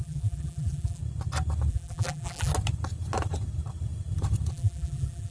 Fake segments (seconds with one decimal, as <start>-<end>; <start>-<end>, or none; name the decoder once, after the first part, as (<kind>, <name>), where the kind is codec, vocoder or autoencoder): 0.0-1.0 (vocoder, BigVGAN v2); 1.7-2.5; 4.5-5.3